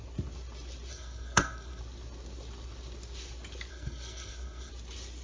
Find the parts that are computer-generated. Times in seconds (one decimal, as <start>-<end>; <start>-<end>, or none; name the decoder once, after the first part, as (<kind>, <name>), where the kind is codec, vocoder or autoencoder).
0.9-1.8 (codec, SNAC); 3.7-4.7